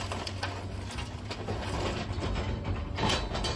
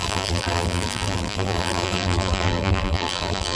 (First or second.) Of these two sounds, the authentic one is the first